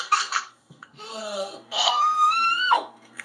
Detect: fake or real fake